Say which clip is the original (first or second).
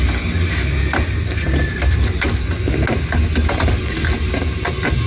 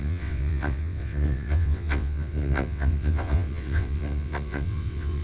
first